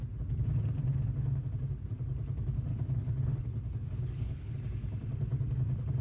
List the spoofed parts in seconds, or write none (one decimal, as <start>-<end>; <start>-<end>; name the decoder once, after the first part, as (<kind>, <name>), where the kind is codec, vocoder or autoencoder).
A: 0.9-1.5 (codec, HILCodec); 2.7-4.5

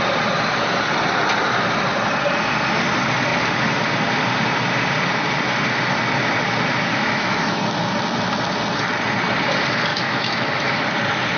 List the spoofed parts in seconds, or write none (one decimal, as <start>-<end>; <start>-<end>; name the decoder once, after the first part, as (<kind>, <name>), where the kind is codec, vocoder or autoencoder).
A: 6.9-7.6 (autoencoder, DAC-VAE); 9.9-10.7

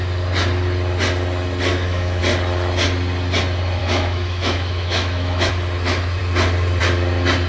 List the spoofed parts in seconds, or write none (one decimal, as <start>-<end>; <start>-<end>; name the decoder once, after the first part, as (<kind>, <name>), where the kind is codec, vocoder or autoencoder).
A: 1.7-2.2 (autoencoder, DAC-VAE); 3.8-5.5

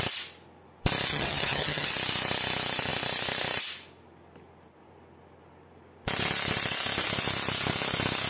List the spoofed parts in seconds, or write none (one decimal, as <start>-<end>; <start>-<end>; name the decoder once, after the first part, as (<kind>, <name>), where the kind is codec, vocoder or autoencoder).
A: 1.1-1.9 (vocoder, HiFi-GAN)

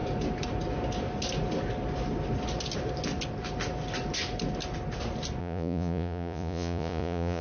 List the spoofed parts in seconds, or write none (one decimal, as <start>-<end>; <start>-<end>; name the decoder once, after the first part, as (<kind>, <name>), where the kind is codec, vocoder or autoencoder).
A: 5.4-7.4 (vocoder, Vocos)

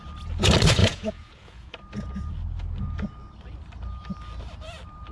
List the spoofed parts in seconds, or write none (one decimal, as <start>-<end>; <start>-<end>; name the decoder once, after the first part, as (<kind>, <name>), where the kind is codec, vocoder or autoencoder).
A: 0.8-1.7 (vocoder, Vocos)